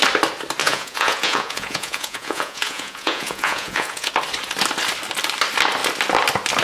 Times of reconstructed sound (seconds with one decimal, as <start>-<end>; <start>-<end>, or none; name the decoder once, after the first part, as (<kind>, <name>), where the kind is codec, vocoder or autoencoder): 0.6-4.1 (vocoder, Vocos)